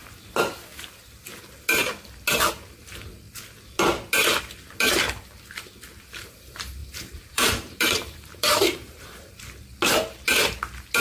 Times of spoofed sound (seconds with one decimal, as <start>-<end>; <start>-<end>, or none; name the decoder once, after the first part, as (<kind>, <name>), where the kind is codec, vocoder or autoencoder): 6.8-9.3 (vocoder, BigVGAN v2)